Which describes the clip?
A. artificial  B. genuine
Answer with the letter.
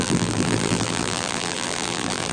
A